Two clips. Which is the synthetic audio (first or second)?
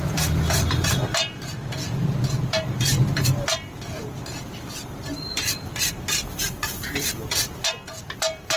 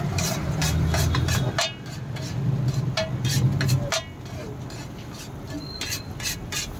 first